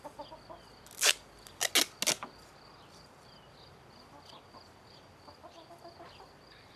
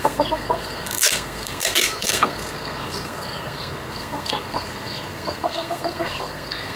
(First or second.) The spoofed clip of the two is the second